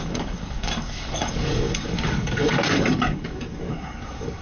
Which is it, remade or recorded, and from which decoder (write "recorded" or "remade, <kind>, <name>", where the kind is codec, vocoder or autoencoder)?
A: remade, codec, DAC